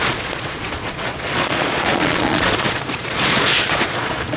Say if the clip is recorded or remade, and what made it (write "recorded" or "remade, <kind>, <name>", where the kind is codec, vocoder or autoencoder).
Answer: remade, vocoder, Vocos